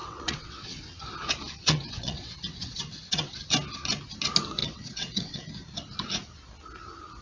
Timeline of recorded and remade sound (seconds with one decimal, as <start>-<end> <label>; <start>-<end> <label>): 0.0-1.1 remade; 1.1-1.6 recorded; 1.6-3.4 remade; 3.4-4.6 recorded; 4.6-5.4 remade; 5.4-7.2 recorded